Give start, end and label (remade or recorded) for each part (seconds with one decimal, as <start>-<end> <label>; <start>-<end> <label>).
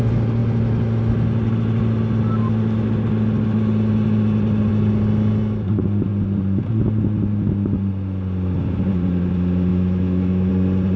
0.0-9.7 recorded; 9.7-10.5 remade; 10.5-11.0 recorded